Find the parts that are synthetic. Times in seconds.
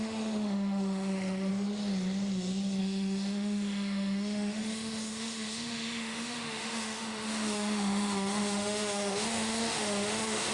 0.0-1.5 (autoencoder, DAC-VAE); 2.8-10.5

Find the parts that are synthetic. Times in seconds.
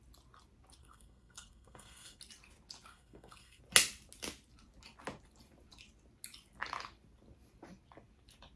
0.8-2.2 (codec, SNAC); 2.9-3.6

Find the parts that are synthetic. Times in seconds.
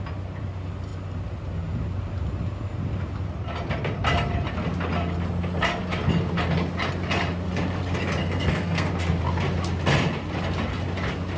8.2-8.9 (codec, SNAC)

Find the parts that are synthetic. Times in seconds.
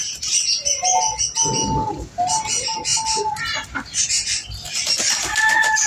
none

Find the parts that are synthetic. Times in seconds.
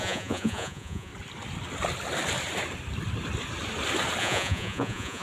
0.0-1.1 (vocoder, Vocos); 4.2-5.2